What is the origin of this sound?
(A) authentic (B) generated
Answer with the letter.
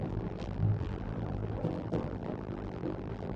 B